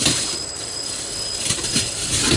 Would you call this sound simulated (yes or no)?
no